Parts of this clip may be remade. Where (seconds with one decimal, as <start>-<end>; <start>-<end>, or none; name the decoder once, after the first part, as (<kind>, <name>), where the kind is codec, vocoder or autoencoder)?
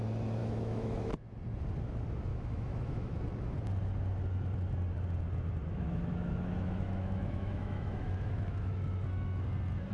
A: 0.4-1.1 (autoencoder, DAC-VAE); 2.3-3.2; 5.6-8.8